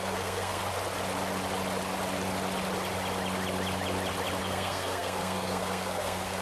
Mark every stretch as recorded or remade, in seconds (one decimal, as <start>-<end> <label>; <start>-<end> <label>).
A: 0.0-0.6 remade; 0.6-4.4 recorded; 4.4-6.4 remade